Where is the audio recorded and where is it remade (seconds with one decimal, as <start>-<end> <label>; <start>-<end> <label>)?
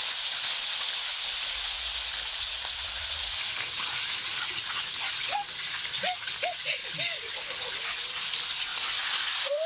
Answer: 0.0-8.7 recorded; 8.7-9.7 remade